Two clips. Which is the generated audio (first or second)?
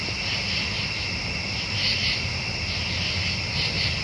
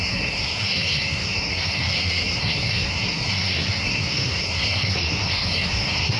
second